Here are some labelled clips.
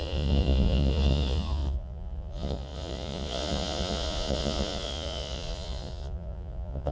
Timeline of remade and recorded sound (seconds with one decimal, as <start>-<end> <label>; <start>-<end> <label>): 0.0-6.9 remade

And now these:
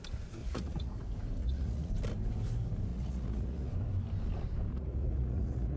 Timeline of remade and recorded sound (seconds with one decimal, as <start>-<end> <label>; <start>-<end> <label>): 0.0-0.4 recorded; 0.4-0.9 remade; 0.9-1.4 recorded; 1.4-1.9 remade; 1.9-2.9 recorded; 2.9-3.7 remade; 3.7-4.7 recorded; 4.7-5.8 remade

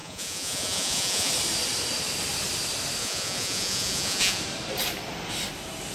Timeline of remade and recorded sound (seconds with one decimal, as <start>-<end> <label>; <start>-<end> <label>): 0.0-1.3 remade; 1.3-3.0 recorded; 3.0-4.4 remade; 4.4-5.9 recorded